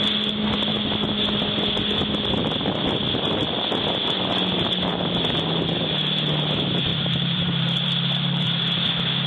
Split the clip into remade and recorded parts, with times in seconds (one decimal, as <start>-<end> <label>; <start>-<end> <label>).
0.0-6.9 recorded; 6.9-8.8 remade; 8.8-9.3 recorded